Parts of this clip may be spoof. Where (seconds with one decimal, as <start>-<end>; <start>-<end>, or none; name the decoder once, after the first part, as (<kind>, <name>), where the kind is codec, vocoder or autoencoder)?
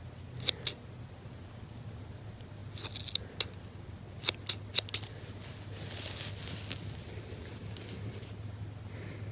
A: none